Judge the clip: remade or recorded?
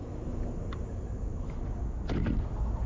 recorded